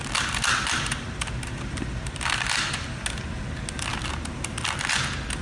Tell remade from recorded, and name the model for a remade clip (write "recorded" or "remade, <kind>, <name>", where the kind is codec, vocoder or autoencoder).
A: recorded